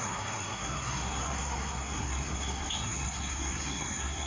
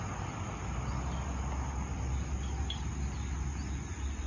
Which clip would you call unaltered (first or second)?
second